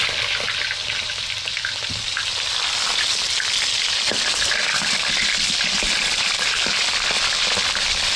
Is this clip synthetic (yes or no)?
no